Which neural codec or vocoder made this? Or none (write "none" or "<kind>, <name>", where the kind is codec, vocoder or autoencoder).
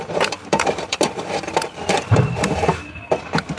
vocoder, BigVGAN v2